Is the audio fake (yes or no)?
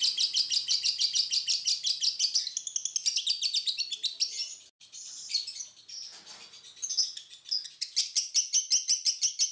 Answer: no